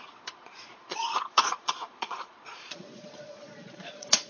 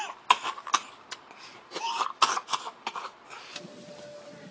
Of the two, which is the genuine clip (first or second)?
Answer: second